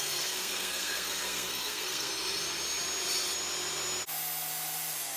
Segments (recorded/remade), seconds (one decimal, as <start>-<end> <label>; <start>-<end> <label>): 0.0-2.1 remade; 2.1-5.2 recorded